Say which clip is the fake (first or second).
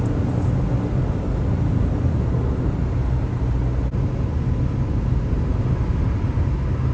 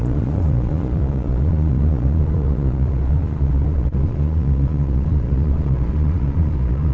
second